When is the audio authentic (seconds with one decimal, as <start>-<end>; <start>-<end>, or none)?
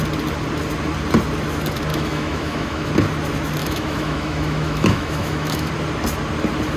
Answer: 0.0-1.9; 2.9-3.6; 5.7-6.8